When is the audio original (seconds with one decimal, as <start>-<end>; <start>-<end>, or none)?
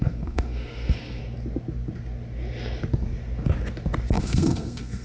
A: 1.2-4.2